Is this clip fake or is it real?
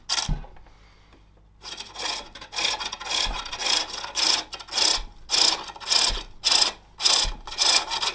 real